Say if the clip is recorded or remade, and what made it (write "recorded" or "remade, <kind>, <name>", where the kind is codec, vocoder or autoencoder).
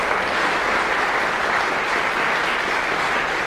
recorded